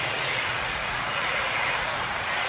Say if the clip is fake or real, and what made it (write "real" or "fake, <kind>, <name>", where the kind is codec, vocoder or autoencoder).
fake, vocoder, Vocos